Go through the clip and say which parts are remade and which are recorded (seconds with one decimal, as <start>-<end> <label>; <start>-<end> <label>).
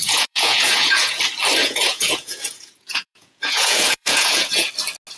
0.0-1.2 remade; 1.2-1.6 recorded; 1.6-4.7 remade; 4.7-5.2 recorded